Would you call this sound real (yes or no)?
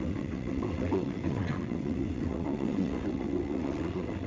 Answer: no